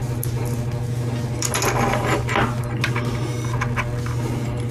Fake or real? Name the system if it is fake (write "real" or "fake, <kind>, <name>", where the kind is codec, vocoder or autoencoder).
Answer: real